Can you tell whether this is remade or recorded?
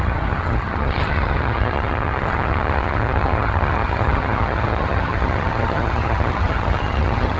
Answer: remade